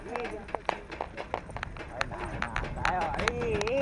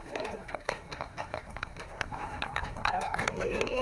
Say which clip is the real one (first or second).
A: first